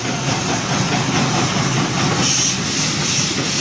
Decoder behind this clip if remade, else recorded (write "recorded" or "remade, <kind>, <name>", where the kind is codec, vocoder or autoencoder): recorded